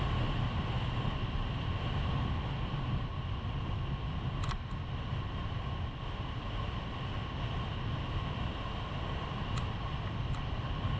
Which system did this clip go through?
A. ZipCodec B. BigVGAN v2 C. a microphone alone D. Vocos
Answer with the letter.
C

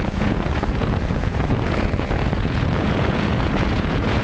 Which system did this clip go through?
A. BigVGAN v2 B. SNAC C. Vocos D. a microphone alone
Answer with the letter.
C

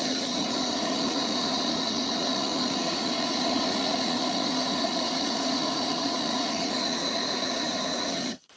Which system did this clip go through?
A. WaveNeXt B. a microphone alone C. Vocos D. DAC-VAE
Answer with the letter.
C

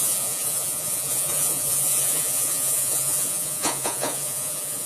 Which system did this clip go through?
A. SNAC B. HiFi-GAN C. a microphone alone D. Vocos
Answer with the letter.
D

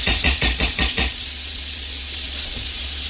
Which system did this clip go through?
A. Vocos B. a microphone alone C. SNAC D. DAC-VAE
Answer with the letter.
A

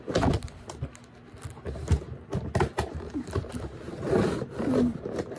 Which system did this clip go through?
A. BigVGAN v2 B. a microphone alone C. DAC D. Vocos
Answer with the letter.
B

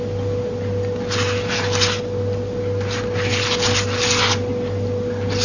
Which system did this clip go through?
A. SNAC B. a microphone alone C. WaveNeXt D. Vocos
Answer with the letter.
B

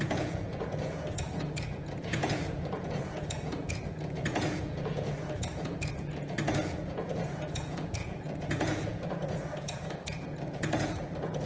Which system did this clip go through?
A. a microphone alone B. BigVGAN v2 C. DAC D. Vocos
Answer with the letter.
D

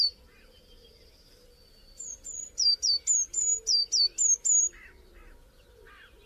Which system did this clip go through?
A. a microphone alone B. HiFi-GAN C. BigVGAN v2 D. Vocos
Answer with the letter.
A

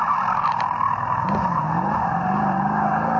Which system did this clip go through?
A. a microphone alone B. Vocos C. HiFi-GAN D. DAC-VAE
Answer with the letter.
A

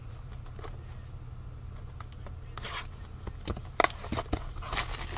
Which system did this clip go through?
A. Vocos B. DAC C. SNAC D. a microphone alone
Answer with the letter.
D